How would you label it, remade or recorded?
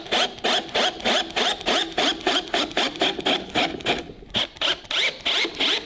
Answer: recorded